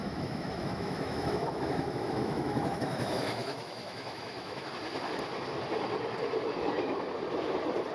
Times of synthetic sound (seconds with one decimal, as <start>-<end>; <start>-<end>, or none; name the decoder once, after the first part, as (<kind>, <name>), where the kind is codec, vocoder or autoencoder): 0.0-4.7 (autoencoder, DAC-VAE)